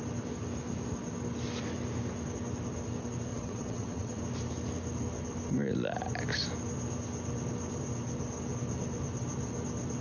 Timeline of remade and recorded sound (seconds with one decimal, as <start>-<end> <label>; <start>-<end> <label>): 0.0-3.3 recorded; 3.3-4.2 remade; 4.2-10.0 recorded